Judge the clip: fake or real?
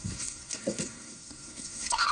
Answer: fake